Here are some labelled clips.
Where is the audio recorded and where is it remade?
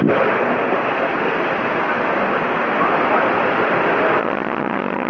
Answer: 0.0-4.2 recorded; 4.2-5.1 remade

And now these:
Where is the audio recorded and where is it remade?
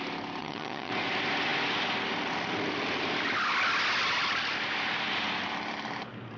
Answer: 0.0-0.4 recorded; 0.4-0.9 remade; 0.9-6.4 recorded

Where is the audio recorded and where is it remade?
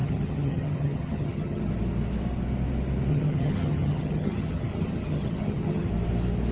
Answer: 0.0-1.7 remade; 1.7-3.1 recorded; 3.1-5.9 remade; 5.9-6.5 recorded